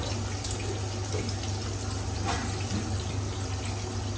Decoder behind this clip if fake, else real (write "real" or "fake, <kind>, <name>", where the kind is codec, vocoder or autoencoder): real